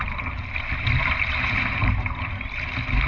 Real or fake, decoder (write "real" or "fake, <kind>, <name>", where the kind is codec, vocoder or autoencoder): real